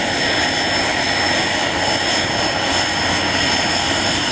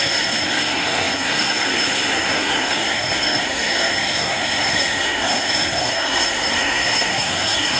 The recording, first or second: first